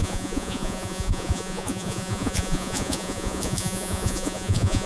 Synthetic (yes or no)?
yes